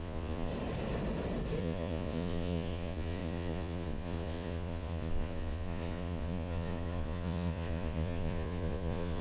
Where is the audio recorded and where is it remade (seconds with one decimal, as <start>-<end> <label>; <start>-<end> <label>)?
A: 0.0-0.5 remade; 0.5-1.6 recorded; 1.6-9.2 remade